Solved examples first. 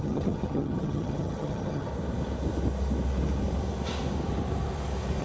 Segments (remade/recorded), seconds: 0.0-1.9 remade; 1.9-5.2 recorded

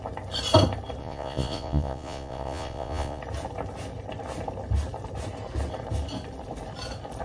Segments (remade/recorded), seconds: 0.0-1.0 recorded; 1.0-3.2 remade; 3.2-7.2 recorded